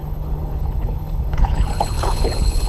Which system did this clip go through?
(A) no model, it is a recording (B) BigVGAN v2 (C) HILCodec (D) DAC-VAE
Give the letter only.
C